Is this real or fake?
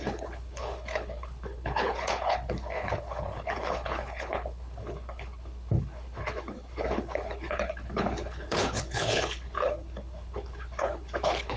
fake